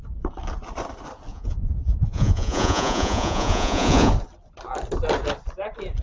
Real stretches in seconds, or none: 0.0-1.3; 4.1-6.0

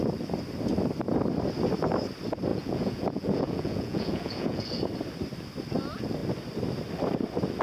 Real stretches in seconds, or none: 0.0-2.5; 4.8-7.6

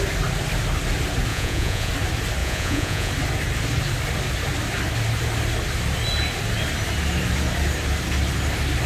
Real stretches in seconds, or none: 0.0-1.3; 1.9-2.4; 3.1-8.9

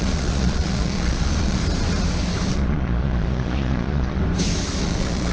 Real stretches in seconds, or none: 1.6-2.5; 4.2-4.8

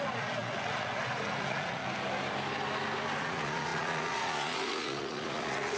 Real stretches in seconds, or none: 1.8-3.2

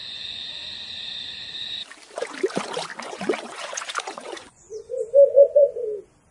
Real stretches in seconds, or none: 0.5-2.9; 4.9-6.3